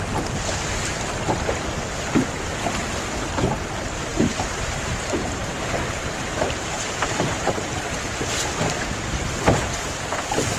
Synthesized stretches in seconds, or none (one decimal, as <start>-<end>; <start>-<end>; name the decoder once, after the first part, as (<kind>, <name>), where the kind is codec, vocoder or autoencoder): 4.1-8.1 (vocoder, BigVGAN v2)